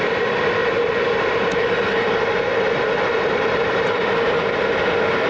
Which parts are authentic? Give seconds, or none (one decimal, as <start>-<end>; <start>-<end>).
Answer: 0.0-5.3